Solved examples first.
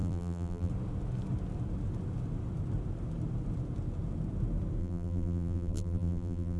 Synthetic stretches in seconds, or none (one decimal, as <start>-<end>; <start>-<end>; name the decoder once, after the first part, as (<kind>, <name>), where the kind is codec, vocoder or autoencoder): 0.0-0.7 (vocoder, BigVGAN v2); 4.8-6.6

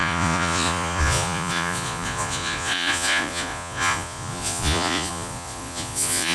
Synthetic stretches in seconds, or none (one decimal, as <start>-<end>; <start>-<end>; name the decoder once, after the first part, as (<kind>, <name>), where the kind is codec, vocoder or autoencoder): 0.0-6.3 (vocoder, Vocos)

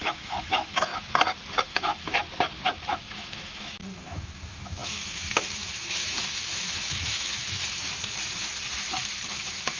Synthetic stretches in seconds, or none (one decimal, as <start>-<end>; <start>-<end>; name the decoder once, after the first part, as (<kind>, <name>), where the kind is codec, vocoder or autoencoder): 0.0-0.9 (autoencoder, DAC-VAE); 1.5-2.2; 2.9-7.7; 9.3-9.8